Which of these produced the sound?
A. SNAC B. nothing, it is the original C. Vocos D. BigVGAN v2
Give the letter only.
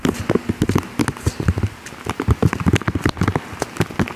B